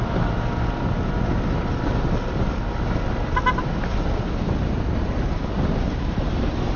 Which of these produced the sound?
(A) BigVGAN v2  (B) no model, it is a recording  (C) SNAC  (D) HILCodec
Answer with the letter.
B